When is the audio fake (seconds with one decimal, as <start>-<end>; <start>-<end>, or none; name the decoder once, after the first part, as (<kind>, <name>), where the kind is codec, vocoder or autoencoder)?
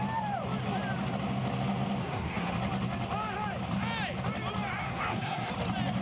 2.0-2.5 (codec, SNAC); 4.8-5.5